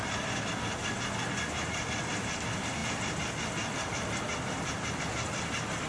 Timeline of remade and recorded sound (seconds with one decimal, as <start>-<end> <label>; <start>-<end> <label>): 0.0-5.9 recorded